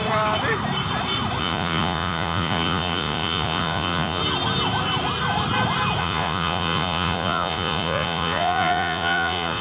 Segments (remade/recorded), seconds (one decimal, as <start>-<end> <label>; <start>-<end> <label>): 0.0-1.4 recorded; 1.4-4.2 remade; 4.2-6.0 recorded; 6.0-9.6 remade